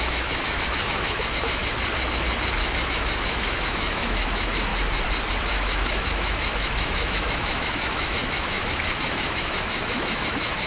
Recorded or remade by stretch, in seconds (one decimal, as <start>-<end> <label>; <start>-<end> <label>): 0.0-1.6 remade; 1.6-2.6 recorded; 2.6-4.7 remade; 4.7-5.4 recorded; 5.4-10.7 remade